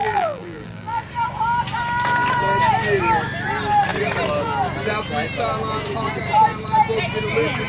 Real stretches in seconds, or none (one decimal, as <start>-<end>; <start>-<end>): 1.0-7.7

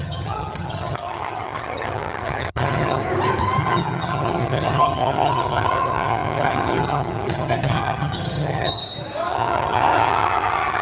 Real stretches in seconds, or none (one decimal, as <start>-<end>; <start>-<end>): 3.0-3.6; 8.8-9.3

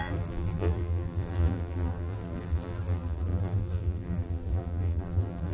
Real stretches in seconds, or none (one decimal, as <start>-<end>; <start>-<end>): none

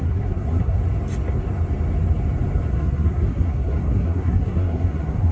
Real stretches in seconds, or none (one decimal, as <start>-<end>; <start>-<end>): 0.8-2.7

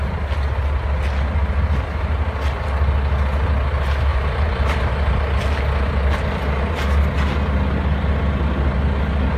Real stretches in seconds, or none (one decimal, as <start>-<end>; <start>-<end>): 0.0-4.1; 4.9-9.4